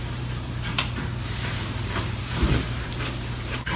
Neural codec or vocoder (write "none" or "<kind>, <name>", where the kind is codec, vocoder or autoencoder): vocoder, BigVGAN v2